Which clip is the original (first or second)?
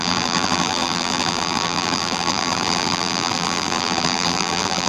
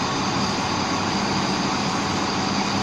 second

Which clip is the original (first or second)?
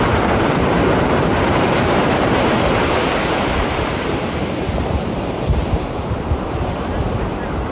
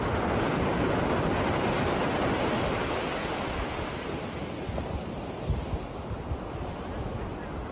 second